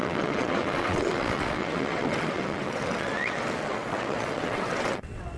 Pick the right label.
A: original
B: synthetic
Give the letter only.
B